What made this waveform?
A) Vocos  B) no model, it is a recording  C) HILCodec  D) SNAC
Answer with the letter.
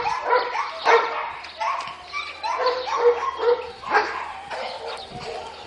B